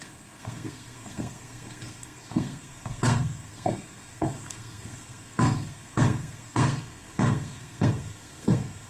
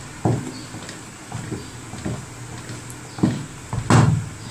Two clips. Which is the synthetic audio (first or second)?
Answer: first